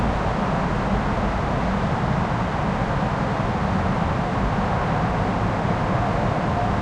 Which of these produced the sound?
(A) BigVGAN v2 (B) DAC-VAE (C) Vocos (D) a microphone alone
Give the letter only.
D